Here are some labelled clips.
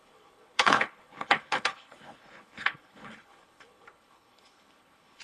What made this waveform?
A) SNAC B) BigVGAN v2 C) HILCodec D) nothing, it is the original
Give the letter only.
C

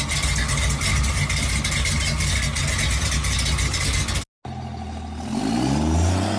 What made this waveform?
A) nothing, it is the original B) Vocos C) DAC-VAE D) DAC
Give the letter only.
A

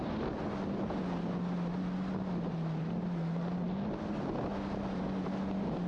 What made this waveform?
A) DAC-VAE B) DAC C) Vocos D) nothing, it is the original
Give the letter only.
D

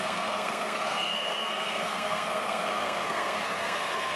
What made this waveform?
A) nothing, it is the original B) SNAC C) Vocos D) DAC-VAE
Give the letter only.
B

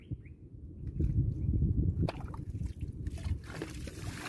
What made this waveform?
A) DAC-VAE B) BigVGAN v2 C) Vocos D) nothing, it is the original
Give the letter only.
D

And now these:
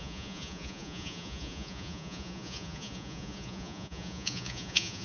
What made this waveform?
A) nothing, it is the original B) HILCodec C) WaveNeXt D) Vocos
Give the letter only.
D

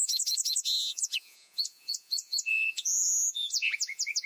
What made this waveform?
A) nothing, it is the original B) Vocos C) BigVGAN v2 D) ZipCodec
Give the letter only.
B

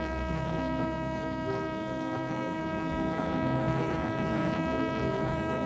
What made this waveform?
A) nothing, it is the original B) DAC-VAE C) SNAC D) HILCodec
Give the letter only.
C